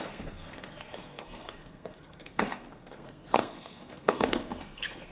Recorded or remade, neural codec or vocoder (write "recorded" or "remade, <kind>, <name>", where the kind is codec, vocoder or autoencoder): remade, codec, SNAC